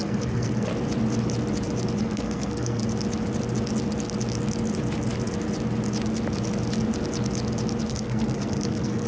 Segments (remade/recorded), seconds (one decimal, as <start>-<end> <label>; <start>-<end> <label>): 0.0-0.7 remade; 0.7-2.0 recorded; 2.0-2.8 remade; 2.8-7.9 recorded; 7.9-9.1 remade